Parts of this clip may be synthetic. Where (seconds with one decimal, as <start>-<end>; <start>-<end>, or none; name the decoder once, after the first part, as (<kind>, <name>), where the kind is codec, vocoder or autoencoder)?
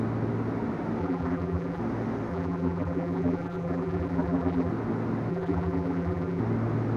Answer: 1.0-1.8 (vocoder, BigVGAN v2); 2.3-4.7; 5.3-6.4